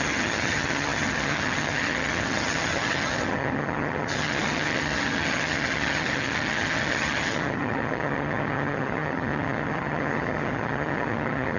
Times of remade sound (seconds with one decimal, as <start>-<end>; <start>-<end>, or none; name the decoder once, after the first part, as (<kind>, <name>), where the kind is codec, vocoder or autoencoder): 0.0-11.6 (vocoder, HiFi-GAN)